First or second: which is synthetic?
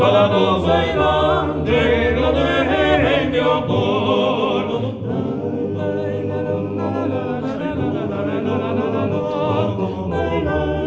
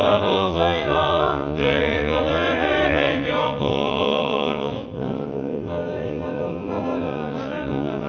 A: second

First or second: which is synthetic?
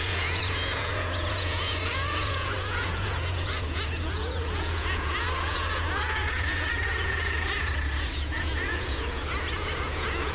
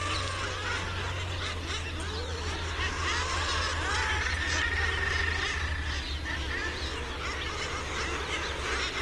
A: first